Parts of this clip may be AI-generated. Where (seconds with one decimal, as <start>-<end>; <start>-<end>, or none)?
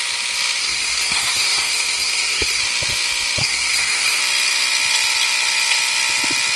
0.6-2.6; 3.4-4.2